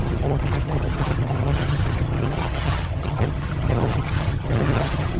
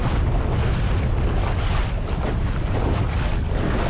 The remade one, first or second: first